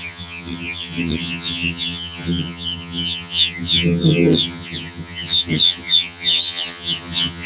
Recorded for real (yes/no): no